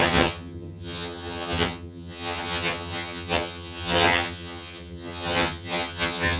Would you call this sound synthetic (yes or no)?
yes